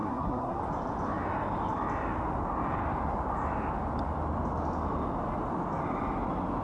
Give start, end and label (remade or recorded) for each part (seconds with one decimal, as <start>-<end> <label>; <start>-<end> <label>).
0.0-0.6 remade; 0.6-6.6 recorded